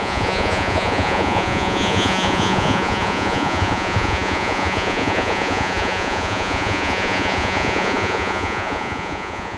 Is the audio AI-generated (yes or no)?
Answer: yes